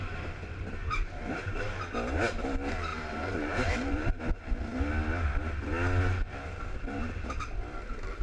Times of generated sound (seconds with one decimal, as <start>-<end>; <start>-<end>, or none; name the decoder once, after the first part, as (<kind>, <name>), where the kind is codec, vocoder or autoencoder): 0.8-1.8 (vocoder, BigVGAN v2); 2.9-4.2